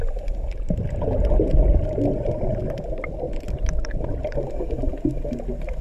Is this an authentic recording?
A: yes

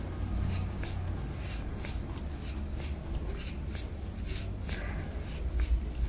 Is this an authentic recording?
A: yes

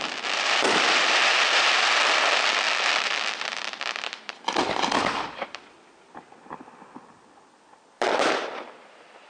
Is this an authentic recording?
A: no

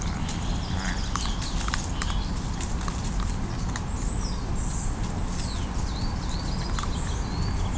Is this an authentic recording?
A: yes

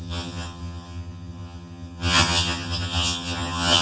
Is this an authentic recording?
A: no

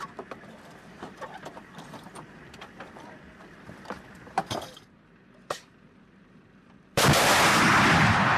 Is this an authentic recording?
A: no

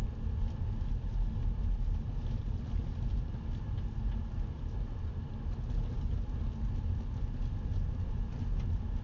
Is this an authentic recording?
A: yes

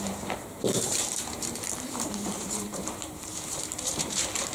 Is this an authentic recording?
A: no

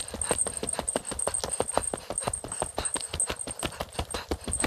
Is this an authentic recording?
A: yes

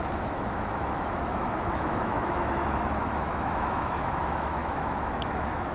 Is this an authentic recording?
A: no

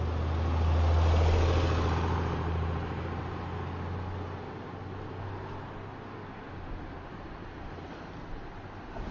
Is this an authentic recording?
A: yes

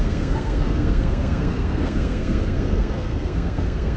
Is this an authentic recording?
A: no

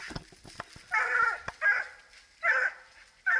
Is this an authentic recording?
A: yes